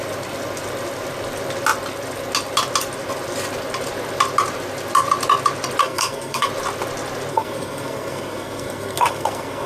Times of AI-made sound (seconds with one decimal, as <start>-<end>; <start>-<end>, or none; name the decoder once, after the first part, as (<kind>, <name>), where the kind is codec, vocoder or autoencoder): 5.8-6.5 (codec, SNAC); 7.3-9.7